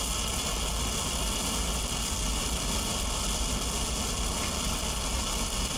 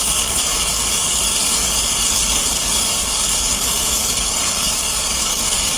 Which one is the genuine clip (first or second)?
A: first